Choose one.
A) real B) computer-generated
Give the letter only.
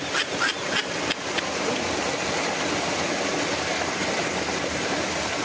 A